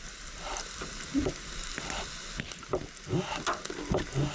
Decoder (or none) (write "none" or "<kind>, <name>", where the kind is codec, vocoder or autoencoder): none